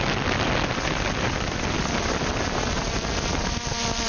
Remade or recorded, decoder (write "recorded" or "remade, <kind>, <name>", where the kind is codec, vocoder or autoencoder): recorded